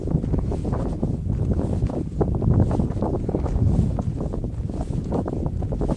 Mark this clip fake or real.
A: real